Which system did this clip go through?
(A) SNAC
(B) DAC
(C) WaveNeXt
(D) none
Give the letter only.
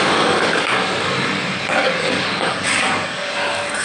B